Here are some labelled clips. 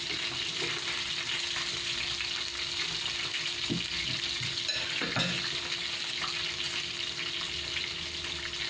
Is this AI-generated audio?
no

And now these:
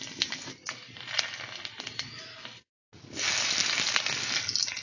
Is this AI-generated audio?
no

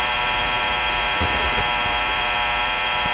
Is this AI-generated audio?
yes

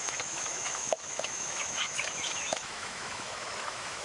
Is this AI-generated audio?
yes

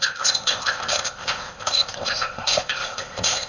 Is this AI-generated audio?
yes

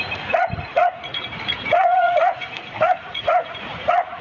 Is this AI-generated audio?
yes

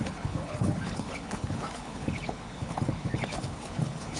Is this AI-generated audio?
yes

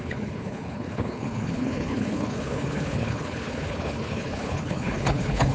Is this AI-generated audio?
yes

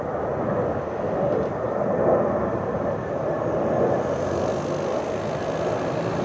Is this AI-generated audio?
no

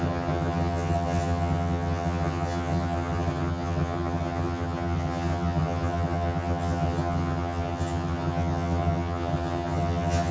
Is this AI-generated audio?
yes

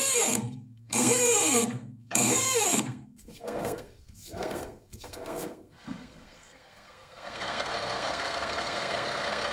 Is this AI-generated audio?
yes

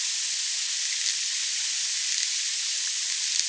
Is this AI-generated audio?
no